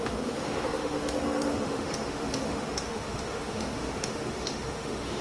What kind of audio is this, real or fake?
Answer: fake